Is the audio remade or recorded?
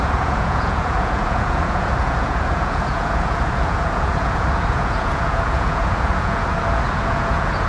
remade